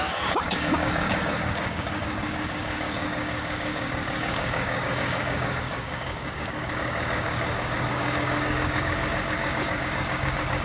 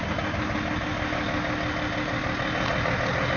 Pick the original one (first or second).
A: second